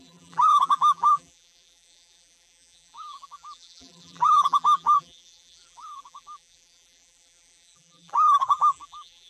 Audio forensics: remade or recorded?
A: remade